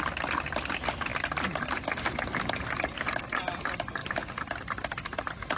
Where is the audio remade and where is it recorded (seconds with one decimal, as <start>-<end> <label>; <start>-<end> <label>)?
0.0-5.6 recorded